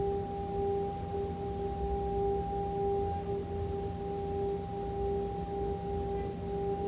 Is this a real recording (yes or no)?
yes